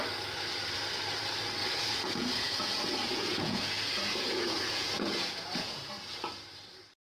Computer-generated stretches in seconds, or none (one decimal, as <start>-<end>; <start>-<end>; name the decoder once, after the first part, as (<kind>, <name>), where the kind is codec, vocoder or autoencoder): 1.6-5.9 (vocoder, Vocos)